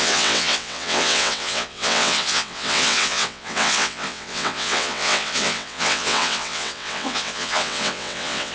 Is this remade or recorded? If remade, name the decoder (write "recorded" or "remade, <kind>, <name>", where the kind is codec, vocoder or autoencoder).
remade, vocoder, WaveNeXt